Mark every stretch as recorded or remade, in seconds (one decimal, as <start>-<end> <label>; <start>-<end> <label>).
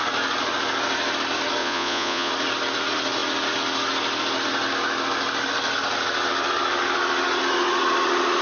0.0-1.6 recorded; 1.6-2.3 remade; 2.3-8.4 recorded